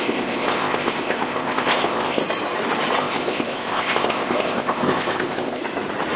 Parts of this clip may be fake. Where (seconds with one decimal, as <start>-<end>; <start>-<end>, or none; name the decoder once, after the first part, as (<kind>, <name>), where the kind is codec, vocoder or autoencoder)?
0.0-2.2 (codec, ZipCodec); 3.0-5.6